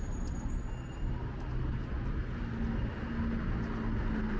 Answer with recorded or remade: recorded